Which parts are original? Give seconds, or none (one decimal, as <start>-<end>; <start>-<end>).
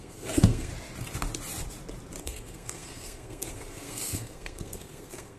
0.7-2.2